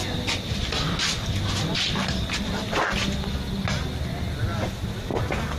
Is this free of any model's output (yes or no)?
yes